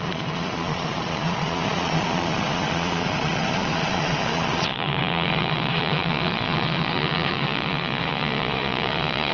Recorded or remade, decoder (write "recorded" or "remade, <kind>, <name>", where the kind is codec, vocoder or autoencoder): remade, vocoder, Vocos